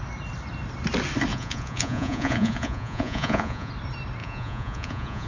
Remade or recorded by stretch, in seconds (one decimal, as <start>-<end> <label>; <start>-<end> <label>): 0.0-1.3 recorded; 1.3-3.7 remade; 3.7-4.2 recorded; 4.2-5.3 remade